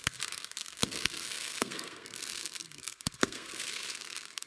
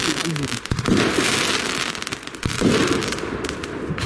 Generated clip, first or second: first